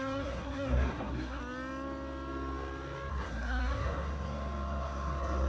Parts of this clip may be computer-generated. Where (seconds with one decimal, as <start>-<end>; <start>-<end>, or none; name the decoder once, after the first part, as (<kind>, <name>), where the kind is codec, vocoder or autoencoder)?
0.0-1.4 (codec, SNAC); 3.1-5.5